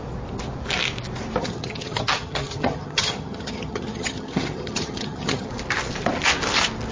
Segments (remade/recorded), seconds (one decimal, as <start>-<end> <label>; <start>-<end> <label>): 0.0-1.4 recorded; 1.4-5.5 remade; 5.5-6.9 recorded